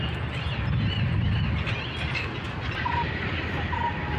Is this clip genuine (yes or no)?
yes